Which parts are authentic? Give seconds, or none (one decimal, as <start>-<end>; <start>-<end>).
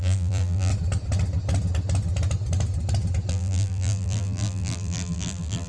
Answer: 0.7-3.3